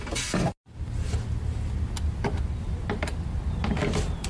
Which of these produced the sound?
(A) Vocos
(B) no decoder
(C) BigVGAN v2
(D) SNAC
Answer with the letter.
B